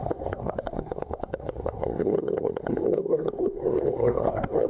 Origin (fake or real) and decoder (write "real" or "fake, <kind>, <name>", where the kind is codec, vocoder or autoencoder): fake, codec, SNAC